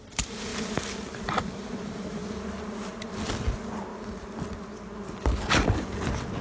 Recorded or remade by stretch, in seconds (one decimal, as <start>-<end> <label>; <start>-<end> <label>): 0.0-6.4 recorded